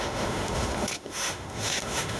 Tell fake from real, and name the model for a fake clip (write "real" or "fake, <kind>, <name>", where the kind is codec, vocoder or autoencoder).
fake, autoencoder, DAC-VAE